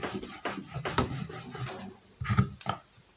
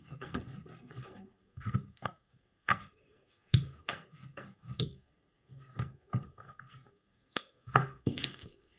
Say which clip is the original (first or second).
first